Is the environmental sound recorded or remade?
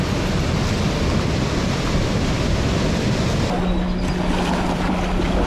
recorded